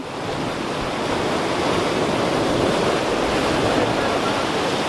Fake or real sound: real